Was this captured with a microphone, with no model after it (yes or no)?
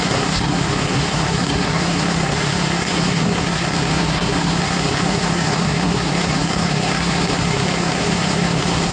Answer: no